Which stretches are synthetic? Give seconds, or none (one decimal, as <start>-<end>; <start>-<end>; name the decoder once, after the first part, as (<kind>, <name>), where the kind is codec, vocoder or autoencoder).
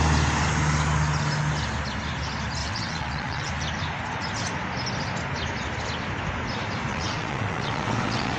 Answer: 2.6-3.5 (vocoder, WaveNeXt); 6.9-8.4